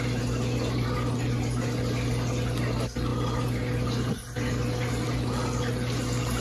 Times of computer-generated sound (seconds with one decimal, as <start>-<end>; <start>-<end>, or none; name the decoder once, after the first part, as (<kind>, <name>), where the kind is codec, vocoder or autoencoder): none